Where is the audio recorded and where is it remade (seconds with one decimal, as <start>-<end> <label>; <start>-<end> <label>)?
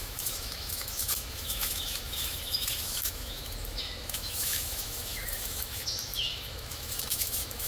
0.0-7.7 remade